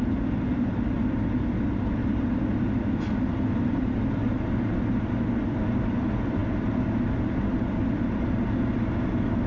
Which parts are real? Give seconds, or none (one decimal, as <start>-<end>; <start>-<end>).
2.0-3.3; 6.4-7.4